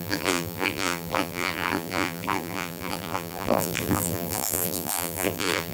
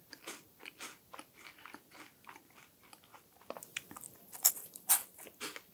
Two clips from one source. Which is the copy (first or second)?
first